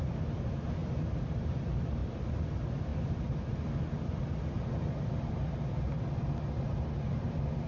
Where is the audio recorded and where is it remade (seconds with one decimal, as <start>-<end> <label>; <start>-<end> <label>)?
0.0-2.0 recorded; 2.0-2.5 remade; 2.5-7.7 recorded